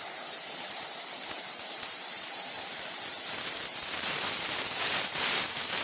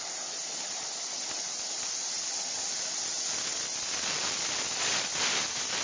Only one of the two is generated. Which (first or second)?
first